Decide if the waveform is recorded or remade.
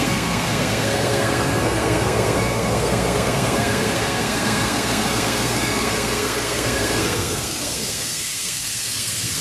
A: remade